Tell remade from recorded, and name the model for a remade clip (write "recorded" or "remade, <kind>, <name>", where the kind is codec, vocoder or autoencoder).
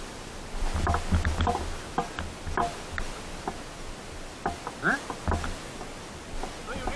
recorded